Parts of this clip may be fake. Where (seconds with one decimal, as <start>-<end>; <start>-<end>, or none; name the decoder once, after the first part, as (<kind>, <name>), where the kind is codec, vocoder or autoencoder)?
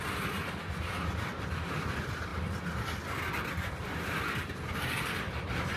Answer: 0.0-2.3 (vocoder, BigVGAN v2); 3.7-5.8